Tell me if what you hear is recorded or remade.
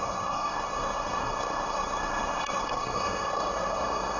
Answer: remade